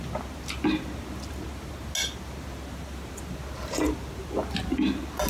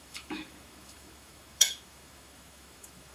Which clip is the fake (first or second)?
second